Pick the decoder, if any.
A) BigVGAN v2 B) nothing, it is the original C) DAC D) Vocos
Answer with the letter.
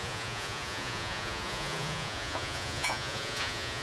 D